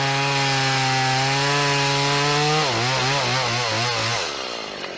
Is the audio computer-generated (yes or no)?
no